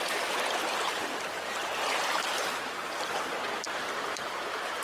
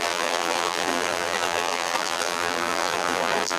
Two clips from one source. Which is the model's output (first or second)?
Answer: second